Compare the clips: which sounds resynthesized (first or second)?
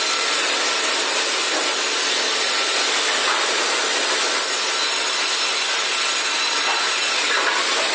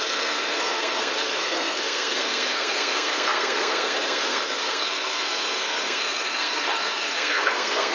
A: second